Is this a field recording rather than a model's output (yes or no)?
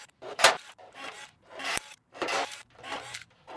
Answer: no